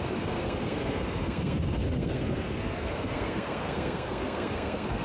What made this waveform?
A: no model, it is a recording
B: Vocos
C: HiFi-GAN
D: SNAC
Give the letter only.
D